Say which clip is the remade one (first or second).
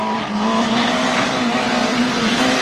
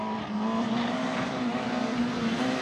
first